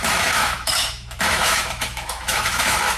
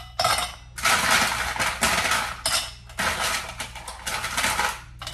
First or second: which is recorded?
second